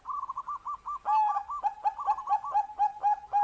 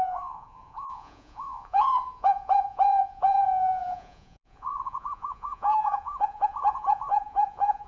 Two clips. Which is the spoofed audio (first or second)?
second